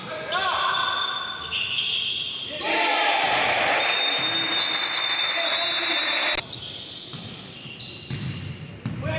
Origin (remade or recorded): recorded